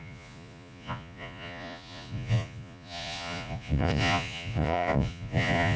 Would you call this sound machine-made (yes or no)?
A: yes